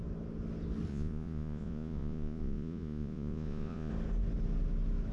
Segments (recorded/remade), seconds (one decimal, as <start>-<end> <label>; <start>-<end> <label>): 0.0-0.9 recorded; 0.9-3.9 remade; 3.9-5.1 recorded

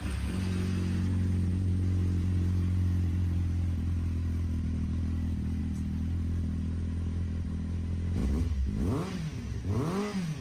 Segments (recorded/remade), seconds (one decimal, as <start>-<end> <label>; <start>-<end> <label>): 0.0-10.4 recorded